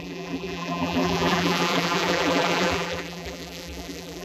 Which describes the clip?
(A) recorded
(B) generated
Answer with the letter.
B